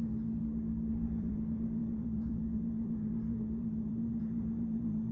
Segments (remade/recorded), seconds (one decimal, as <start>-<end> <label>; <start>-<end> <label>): 0.0-0.4 remade; 0.4-0.9 recorded; 0.9-5.1 remade